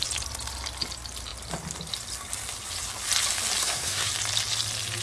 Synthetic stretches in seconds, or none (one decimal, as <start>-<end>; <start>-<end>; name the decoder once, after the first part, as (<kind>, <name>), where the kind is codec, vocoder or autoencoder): 3.6-4.1 (codec, SNAC)